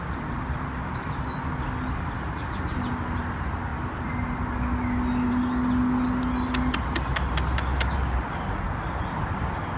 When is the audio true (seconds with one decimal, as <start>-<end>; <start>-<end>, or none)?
0.0-9.8